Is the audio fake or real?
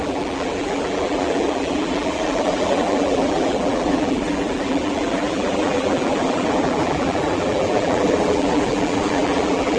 fake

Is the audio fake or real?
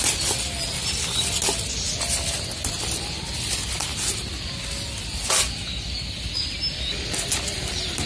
real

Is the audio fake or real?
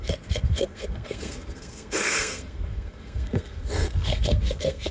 fake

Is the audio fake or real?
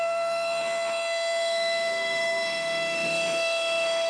fake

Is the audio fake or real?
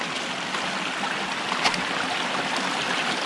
real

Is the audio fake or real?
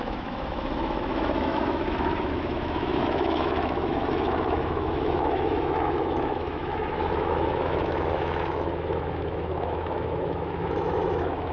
fake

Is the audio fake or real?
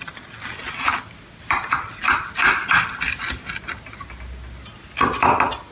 real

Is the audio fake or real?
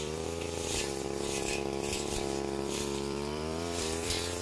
fake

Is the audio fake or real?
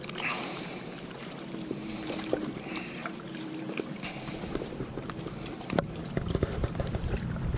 fake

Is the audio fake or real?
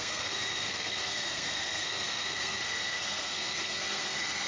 fake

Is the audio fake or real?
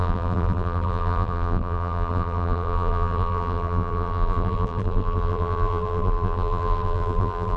fake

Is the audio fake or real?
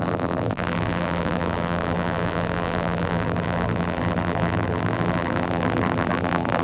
fake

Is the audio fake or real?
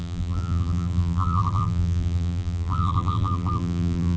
fake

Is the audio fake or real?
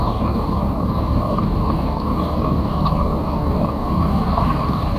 fake